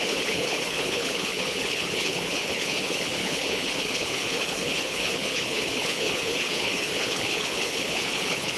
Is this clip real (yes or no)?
no